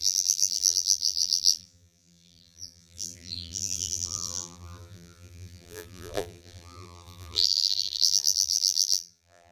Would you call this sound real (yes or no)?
no